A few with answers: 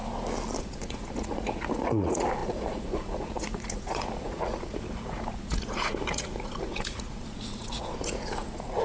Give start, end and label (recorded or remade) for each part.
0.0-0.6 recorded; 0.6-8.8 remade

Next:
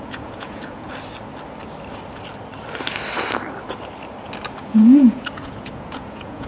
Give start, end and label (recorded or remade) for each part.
0.0-0.9 remade; 0.9-4.6 recorded; 4.6-6.5 remade

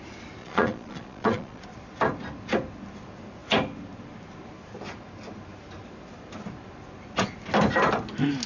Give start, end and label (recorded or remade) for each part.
0.0-0.4 recorded; 0.4-1.6 remade; 1.6-8.5 recorded